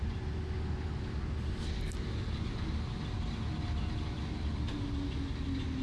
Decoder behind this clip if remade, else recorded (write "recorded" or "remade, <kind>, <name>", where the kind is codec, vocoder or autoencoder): recorded